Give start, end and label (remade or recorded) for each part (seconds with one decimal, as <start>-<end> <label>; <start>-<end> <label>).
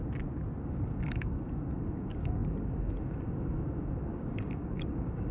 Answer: 0.0-0.6 recorded; 0.6-5.3 remade